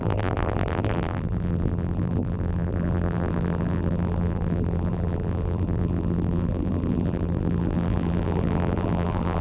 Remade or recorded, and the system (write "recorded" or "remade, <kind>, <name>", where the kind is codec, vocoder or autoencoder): remade, vocoder, BigVGAN v2